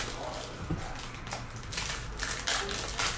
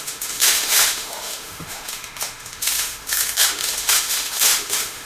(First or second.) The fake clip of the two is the second